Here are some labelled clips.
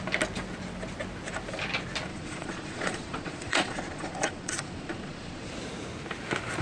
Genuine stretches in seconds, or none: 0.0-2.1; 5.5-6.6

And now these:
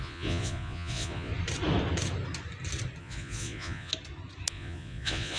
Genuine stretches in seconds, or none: 1.3-3.0; 3.9-4.5